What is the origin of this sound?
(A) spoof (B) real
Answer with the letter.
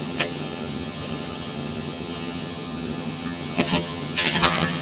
A